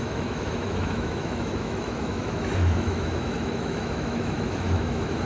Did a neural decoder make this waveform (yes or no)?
yes